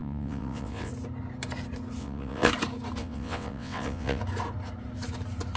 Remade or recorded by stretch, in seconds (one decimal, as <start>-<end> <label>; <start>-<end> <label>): 0.0-0.9 remade; 0.9-2.0 recorded; 2.0-2.5 remade; 2.5-3.0 recorded; 3.0-4.2 remade; 4.2-5.6 recorded